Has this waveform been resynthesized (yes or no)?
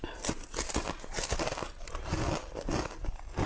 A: no